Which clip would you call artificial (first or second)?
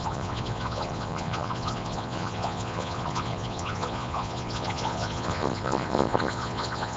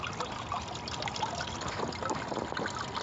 first